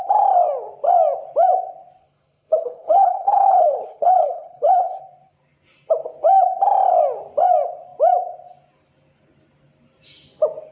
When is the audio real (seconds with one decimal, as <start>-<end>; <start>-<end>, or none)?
0.0-2.0; 5.0-10.7